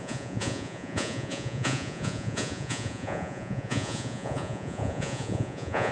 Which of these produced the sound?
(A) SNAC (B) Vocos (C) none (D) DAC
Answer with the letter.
B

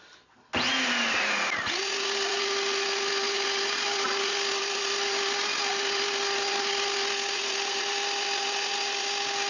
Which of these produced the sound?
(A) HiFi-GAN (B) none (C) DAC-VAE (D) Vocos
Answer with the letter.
B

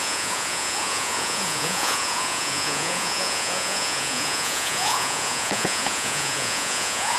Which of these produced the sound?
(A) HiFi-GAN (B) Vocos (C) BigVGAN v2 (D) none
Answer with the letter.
B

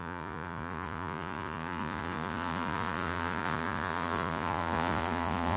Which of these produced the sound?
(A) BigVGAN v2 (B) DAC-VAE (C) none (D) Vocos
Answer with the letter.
D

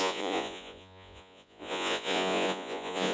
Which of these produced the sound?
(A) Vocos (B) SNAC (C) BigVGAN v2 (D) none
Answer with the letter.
A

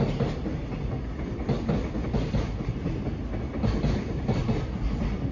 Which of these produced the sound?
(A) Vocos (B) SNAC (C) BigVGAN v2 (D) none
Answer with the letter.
D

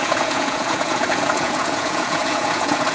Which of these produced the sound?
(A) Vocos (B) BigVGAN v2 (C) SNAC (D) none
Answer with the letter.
A